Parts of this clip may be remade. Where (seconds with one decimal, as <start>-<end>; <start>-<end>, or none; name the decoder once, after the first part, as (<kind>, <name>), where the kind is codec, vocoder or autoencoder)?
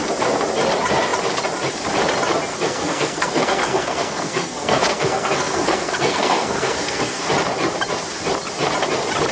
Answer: 2.5-7.3 (codec, SNAC)